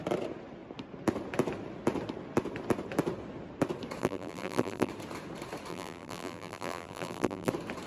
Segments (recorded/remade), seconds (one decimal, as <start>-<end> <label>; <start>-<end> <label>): 0.0-4.0 recorded; 4.0-4.9 remade; 4.9-5.7 recorded; 5.7-7.5 remade; 7.5-7.9 recorded